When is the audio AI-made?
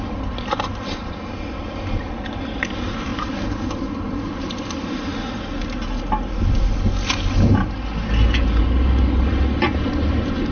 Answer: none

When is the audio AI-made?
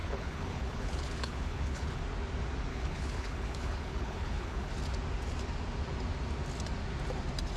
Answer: 0.0-2.0 (codec, HILCodec); 2.7-4.7